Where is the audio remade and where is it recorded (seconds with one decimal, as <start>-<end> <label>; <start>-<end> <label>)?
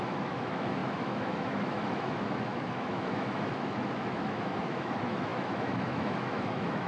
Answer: 0.0-6.9 remade